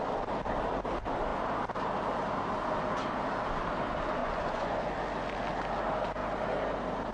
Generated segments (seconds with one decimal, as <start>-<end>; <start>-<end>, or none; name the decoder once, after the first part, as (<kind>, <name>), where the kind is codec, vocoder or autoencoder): 4.2-4.9 (vocoder, Vocos)